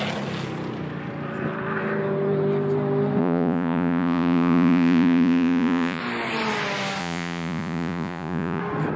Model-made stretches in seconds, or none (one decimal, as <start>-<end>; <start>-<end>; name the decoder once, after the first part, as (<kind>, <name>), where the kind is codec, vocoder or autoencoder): 3.2-6.0 (vocoder, Vocos); 7.0-8.6

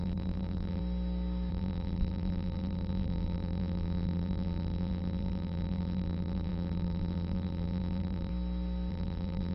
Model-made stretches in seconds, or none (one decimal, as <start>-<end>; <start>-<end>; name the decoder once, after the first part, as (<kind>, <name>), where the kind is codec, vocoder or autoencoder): 0.0-0.8 (vocoder, BigVGAN v2); 1.5-8.3; 8.9-9.5